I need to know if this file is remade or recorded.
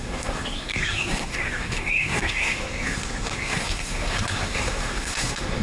remade